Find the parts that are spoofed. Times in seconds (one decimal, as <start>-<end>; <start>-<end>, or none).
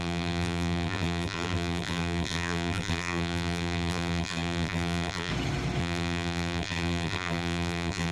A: 0.0-5.3; 5.8-8.1